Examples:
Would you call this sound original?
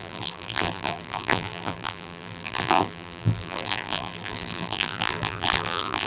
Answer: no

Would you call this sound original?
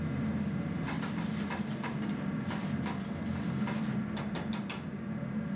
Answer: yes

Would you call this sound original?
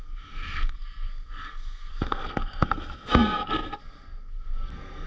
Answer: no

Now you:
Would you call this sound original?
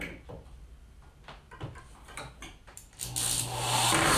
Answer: yes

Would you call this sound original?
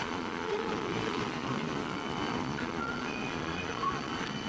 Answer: no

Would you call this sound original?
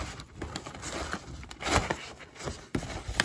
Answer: yes